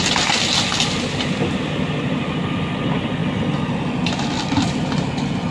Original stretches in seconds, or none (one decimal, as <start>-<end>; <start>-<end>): 0.0-5.5